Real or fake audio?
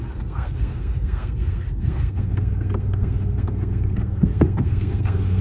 fake